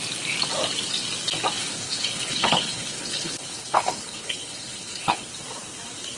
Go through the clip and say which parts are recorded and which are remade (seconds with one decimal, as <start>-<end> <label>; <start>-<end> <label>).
0.0-1.6 recorded; 1.6-5.3 remade; 5.3-6.2 recorded